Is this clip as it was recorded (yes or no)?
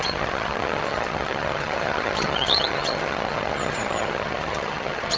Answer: no